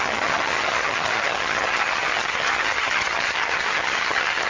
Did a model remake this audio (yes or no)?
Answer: yes